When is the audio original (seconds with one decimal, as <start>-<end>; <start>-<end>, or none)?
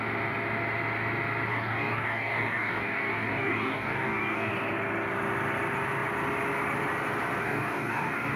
0.0-1.5; 4.5-7.4